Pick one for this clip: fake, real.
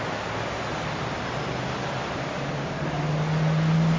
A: real